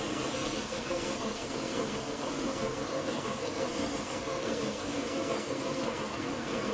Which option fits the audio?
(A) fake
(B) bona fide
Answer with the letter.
A